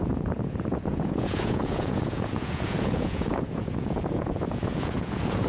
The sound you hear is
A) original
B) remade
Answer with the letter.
B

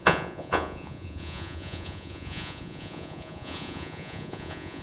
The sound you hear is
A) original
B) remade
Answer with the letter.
B